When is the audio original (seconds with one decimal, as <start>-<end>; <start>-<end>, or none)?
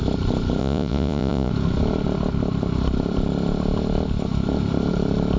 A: 0.0-0.6; 1.5-5.4